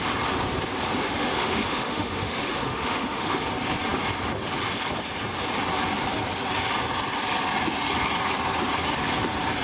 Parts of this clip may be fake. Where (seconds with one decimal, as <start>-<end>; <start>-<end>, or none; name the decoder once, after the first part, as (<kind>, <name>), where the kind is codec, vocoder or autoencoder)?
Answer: 1.0-3.4 (autoencoder, DAC-VAE)